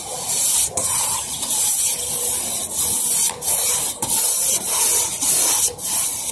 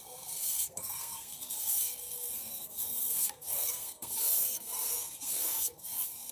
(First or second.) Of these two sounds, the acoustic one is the first